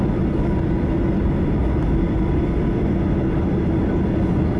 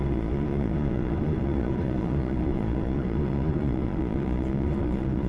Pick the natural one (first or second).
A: first